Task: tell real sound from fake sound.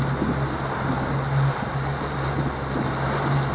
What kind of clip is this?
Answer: real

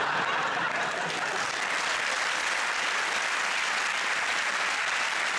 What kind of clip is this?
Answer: real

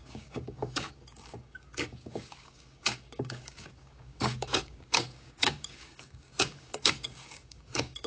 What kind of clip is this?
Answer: fake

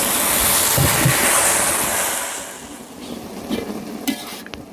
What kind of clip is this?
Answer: real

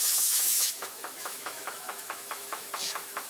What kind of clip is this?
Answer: fake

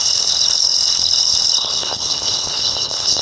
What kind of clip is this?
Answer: fake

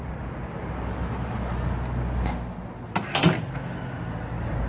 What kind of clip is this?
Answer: real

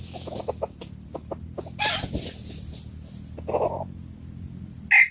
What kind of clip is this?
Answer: real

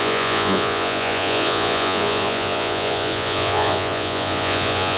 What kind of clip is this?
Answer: fake